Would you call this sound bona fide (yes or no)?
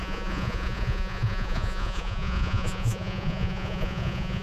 no